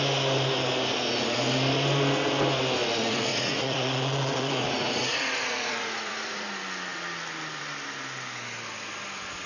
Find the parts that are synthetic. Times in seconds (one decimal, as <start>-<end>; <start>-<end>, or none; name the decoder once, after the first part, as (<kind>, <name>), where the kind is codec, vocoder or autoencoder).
3.3-6.5 (vocoder, Vocos)